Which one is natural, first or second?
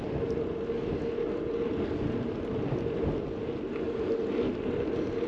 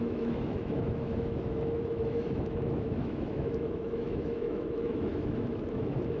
first